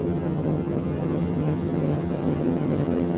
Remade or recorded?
remade